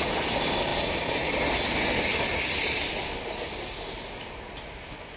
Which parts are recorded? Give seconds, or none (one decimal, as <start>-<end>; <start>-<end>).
0.0-2.1; 2.9-5.2